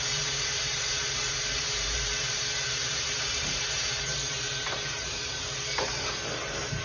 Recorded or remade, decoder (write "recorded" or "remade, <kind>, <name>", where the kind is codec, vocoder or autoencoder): remade, vocoder, BigVGAN v2